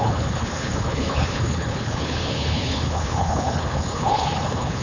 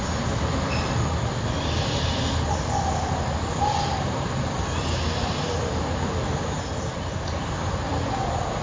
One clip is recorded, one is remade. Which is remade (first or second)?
first